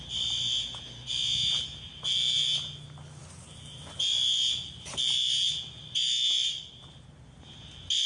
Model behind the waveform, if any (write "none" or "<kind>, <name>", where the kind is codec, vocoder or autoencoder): none